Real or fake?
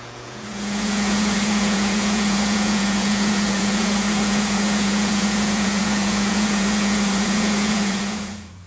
fake